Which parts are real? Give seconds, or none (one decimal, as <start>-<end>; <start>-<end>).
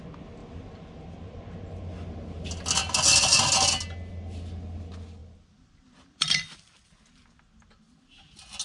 0.0-0.4; 1.4-5.2; 6.3-8.6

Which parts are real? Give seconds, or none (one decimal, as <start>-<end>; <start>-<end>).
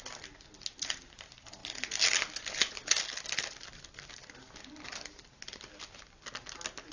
0.0-6.9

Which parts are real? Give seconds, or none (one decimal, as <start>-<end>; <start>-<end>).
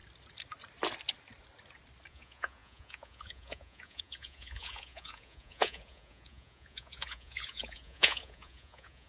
0.0-2.1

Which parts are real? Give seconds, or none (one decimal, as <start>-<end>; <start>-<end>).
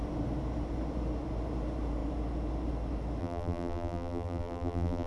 0.0-3.2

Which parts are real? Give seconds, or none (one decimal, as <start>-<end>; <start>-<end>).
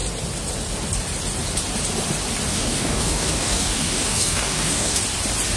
0.0-2.5; 5.0-5.6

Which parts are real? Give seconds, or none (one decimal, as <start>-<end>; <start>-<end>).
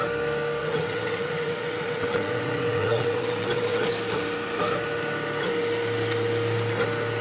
0.0-0.6; 3.9-7.2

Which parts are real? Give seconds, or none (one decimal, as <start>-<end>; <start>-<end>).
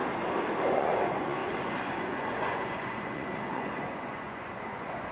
0.0-0.6